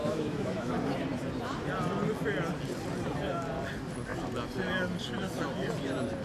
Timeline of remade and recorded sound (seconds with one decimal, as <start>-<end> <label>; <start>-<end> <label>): 0.0-0.7 remade; 0.7-6.2 recorded